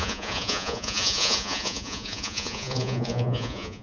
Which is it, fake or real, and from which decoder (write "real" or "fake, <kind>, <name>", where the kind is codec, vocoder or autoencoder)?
fake, vocoder, Vocos